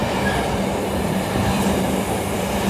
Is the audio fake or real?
real